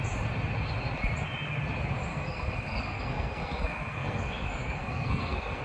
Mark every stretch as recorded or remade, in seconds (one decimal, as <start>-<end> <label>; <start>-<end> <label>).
0.0-2.1 recorded; 2.1-5.6 remade